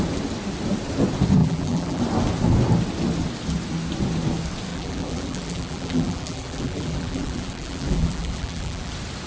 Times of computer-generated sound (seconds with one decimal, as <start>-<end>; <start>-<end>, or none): 1.4-2.0; 4.7-8.9